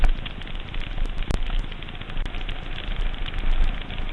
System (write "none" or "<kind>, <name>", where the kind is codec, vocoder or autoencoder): none